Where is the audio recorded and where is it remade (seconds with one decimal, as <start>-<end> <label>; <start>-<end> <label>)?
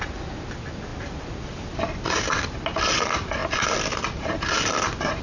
0.0-5.2 recorded